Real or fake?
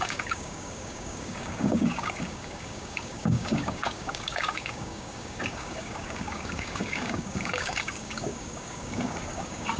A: fake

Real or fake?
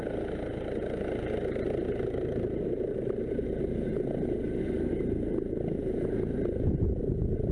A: real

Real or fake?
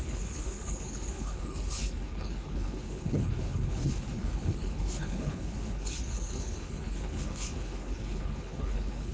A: fake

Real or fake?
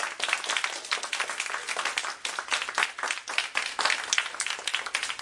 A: real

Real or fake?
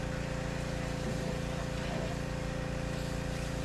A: real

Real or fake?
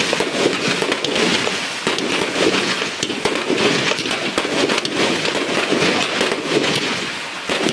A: fake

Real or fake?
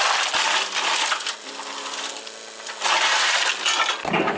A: real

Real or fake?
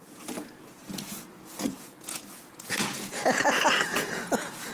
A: fake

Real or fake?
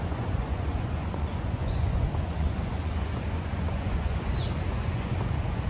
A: fake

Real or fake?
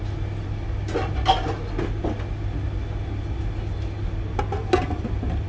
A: real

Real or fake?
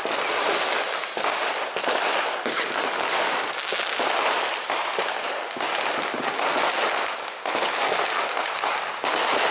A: real